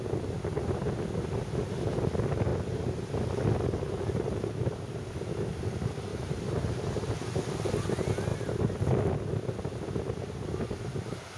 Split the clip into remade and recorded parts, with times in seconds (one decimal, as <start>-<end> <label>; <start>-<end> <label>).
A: 0.0-2.5 recorded; 2.5-3.1 remade; 3.1-6.1 recorded; 6.1-7.0 remade; 7.0-11.4 recorded

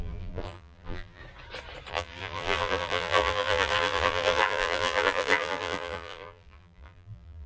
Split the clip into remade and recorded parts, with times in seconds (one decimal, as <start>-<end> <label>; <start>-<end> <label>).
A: 0.0-1.2 remade; 1.2-1.9 recorded; 1.9-7.5 remade

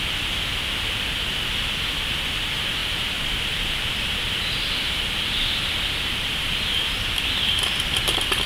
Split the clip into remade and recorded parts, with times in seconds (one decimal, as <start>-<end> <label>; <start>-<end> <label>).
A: 0.0-2.8 recorded; 2.8-7.1 remade; 7.1-8.5 recorded